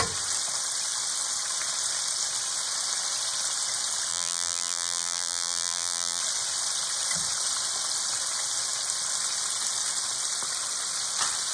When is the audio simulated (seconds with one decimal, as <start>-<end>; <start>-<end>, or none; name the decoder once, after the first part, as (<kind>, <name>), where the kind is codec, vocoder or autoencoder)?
4.1-6.2 (vocoder, BigVGAN v2)